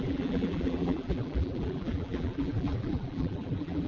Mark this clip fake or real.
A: fake